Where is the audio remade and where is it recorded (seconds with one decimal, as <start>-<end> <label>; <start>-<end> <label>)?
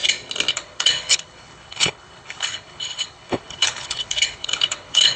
0.0-0.5 recorded; 0.5-5.2 remade